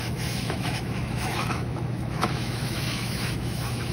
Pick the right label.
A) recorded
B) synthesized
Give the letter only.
B